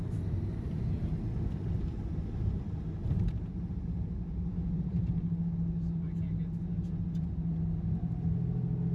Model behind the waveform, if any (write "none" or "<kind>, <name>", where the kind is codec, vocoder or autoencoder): none